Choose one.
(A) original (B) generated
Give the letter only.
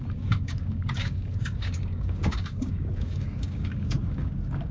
B